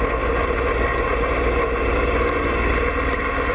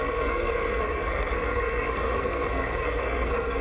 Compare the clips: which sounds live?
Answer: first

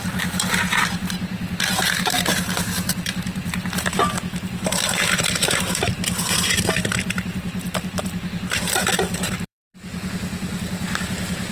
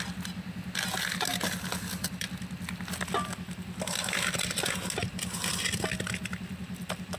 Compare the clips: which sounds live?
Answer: second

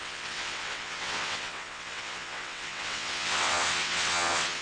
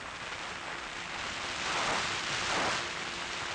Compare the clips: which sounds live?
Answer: second